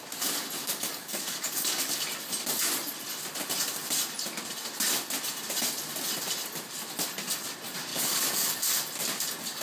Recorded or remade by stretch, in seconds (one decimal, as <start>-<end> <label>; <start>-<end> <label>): 0.0-0.6 recorded; 0.6-1.9 remade; 1.9-7.9 recorded; 7.9-8.5 remade; 8.5-9.6 recorded